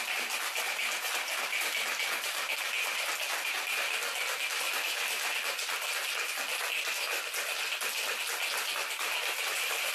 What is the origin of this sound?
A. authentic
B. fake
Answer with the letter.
A